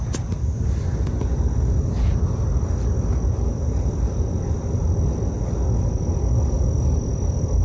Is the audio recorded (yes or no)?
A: yes